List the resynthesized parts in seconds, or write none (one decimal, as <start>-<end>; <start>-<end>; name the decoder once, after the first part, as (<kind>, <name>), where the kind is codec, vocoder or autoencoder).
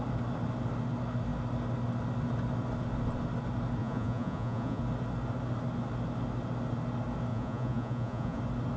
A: 3.8-4.8 (vocoder, Vocos); 7.3-8.4